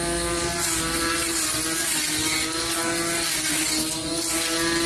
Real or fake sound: real